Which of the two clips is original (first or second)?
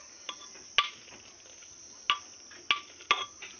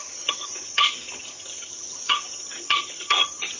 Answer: first